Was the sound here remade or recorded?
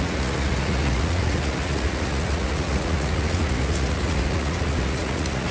remade